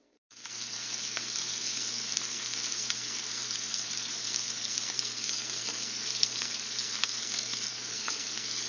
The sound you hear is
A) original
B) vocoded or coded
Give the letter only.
B